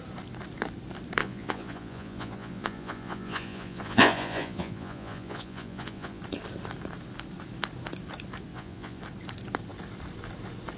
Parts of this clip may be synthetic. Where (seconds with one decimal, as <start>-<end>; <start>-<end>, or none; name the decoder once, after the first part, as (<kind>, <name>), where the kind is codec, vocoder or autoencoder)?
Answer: 1.2-6.2 (vocoder, Vocos); 8.5-9.0